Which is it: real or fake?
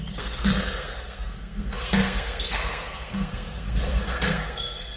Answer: fake